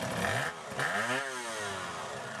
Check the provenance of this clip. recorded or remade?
recorded